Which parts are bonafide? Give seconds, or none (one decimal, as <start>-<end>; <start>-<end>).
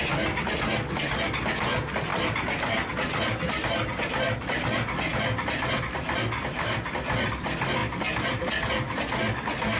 0.0-9.8